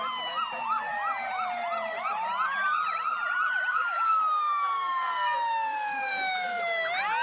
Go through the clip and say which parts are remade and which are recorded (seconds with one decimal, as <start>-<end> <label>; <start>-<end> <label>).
0.0-3.7 recorded; 3.7-6.6 remade; 6.6-7.2 recorded